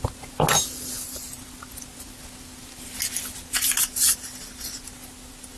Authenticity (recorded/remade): recorded